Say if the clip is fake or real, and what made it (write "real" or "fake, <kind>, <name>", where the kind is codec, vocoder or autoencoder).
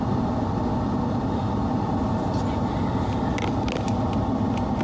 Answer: real